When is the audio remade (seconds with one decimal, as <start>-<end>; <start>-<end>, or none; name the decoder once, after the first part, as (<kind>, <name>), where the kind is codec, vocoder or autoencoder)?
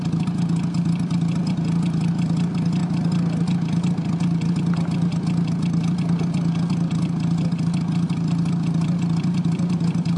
none